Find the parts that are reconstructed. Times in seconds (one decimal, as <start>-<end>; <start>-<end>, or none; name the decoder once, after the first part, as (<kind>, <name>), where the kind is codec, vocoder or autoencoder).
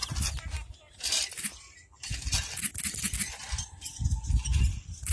none